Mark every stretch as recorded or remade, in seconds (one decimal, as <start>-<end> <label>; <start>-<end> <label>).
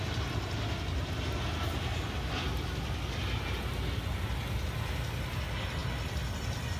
0.0-6.8 recorded